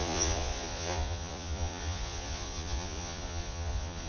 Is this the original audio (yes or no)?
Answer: no